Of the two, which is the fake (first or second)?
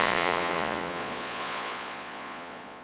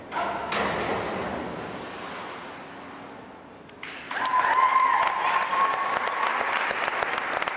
first